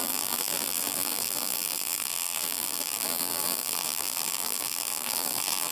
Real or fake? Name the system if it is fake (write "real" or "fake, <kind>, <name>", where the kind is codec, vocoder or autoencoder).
fake, vocoder, BigVGAN v2